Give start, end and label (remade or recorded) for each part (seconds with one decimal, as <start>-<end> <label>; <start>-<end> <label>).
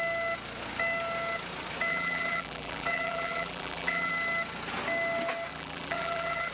0.0-1.9 recorded; 1.9-4.1 remade; 4.1-5.5 recorded; 5.5-6.5 remade